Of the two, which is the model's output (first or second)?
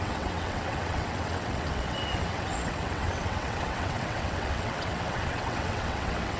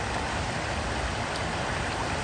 first